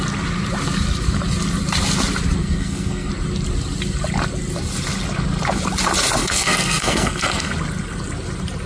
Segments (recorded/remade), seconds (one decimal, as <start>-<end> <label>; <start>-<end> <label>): 0.0-2.4 recorded; 2.4-3.1 remade; 3.1-6.2 recorded; 6.2-7.5 remade; 7.5-8.7 recorded